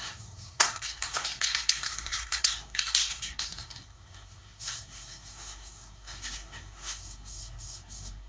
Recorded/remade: remade